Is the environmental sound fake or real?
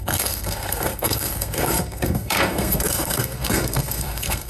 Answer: fake